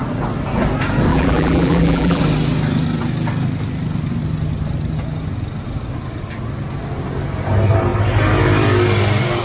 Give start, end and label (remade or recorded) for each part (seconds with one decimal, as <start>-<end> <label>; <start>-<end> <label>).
0.0-1.1 recorded; 1.1-2.2 remade; 2.2-9.4 recorded